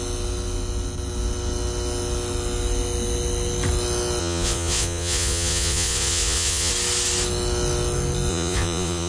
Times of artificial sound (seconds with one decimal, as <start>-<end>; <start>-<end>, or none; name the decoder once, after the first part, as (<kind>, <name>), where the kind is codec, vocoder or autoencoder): 4.2-6.7 (vocoder, Vocos); 8.3-9.1